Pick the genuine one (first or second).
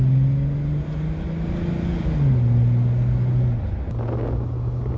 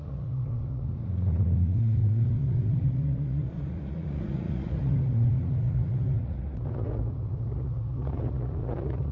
first